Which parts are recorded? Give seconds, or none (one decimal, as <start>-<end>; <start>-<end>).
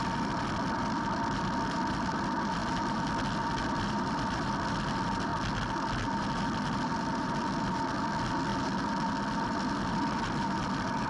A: 2.6-3.6; 5.3-6.1; 8.5-9.3